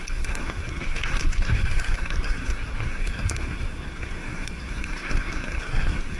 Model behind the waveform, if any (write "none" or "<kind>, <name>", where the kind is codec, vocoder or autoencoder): codec, SNAC